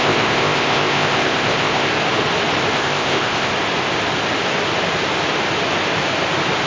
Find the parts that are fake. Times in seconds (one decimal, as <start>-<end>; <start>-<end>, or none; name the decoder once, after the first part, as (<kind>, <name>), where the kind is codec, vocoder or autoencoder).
0.0-1.9 (codec, ZipCodec); 2.7-3.5